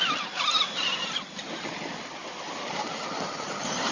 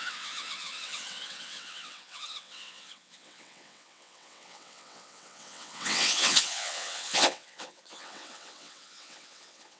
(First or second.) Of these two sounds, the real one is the first